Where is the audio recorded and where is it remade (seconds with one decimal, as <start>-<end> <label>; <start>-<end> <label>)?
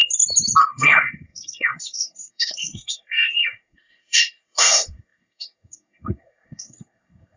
0.0-0.6 recorded; 0.6-7.4 remade